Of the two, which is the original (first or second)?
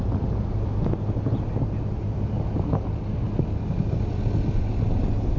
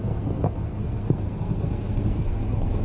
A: first